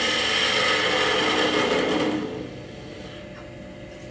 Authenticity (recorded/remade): recorded